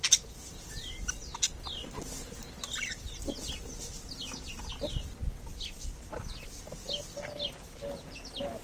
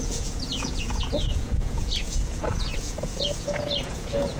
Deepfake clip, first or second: second